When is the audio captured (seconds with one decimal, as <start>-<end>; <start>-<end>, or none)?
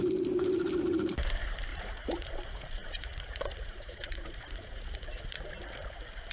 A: 0.0-1.7; 5.5-6.3